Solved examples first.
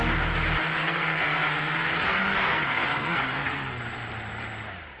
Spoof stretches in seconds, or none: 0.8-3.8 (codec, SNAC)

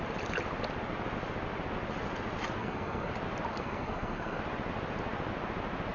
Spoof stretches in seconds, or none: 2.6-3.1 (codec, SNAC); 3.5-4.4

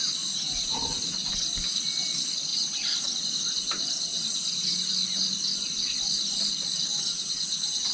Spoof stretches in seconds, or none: none

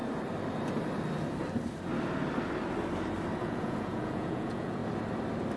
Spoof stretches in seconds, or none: 3.4-4.8 (vocoder, Vocos)

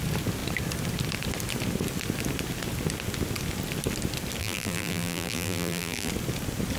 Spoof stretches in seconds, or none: 4.4-6.1 (vocoder, BigVGAN v2)

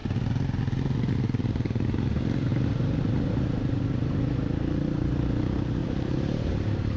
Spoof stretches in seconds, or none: 2.5-3.0 (vocoder, BigVGAN v2); 5.8-7.0